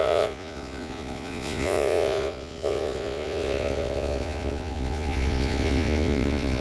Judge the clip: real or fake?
fake